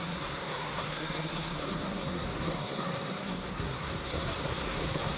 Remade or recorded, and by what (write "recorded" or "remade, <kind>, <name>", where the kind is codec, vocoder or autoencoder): remade, codec, SNAC